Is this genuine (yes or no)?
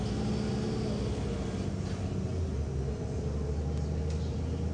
yes